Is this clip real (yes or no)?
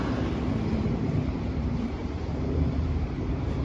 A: no